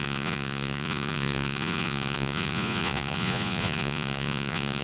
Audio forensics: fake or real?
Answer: fake